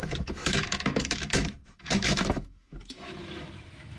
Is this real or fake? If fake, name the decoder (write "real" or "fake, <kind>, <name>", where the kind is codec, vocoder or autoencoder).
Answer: fake, autoencoder, DAC-VAE